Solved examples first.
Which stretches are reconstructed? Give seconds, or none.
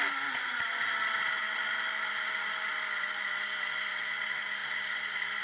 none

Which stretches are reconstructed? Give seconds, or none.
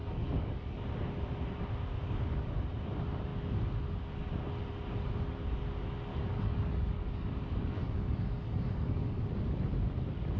0.0-0.8 (codec, DAC); 6.1-9.2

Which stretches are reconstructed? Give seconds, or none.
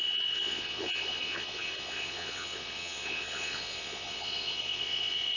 0.0-5.4 (vocoder, Vocos)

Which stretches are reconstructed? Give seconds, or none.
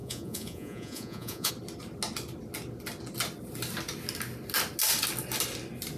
0.0-1.5 (vocoder, Vocos)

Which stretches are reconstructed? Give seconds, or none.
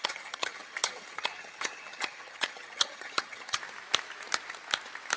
0.0-3.6 (vocoder, HiFi-GAN)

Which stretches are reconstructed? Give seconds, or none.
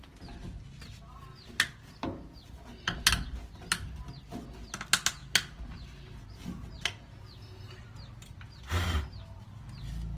none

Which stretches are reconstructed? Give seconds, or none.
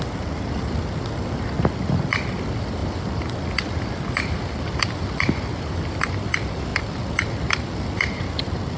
none